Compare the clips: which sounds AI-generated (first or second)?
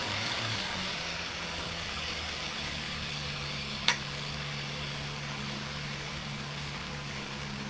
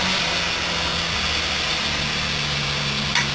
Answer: first